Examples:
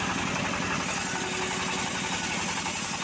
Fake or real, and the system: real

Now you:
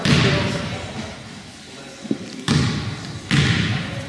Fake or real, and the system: real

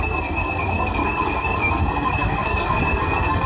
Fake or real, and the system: fake, codec, SNAC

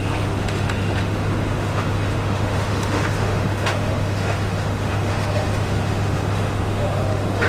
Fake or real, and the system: fake, autoencoder, DAC-VAE